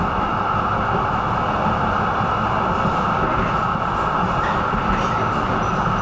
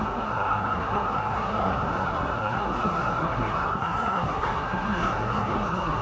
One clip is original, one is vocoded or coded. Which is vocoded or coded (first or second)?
second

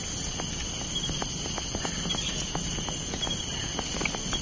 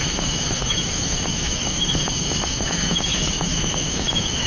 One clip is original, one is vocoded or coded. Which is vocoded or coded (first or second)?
second